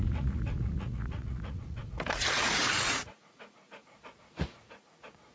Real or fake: fake